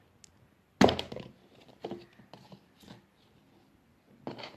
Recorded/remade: recorded